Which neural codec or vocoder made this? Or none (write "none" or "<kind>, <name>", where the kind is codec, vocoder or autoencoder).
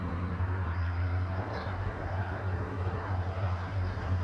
codec, SNAC